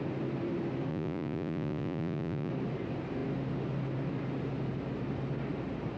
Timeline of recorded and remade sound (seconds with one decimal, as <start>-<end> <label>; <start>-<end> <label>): 0.0-0.9 recorded; 0.9-2.5 remade; 2.5-6.0 recorded

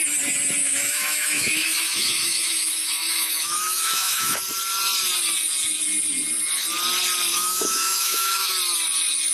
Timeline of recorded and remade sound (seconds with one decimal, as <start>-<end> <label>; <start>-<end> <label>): 0.0-0.6 recorded; 0.6-4.4 remade; 4.4-7.3 recorded; 7.3-8.5 remade; 8.5-9.3 recorded

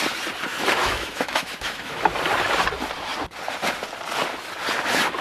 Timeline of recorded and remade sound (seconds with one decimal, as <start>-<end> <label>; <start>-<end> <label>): 0.0-0.5 recorded; 0.5-2.1 remade; 2.1-5.2 recorded

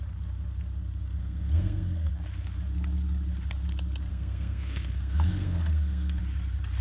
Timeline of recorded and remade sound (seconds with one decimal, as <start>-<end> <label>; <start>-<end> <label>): 0.0-1.2 recorded; 1.2-2.1 remade; 2.1-4.1 recorded; 4.1-6.2 remade; 6.2-6.8 recorded

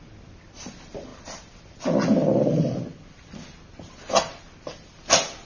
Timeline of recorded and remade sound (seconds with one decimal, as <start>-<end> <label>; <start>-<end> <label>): 0.0-5.5 recorded